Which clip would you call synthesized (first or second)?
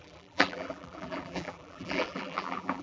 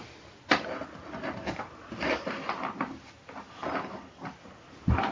first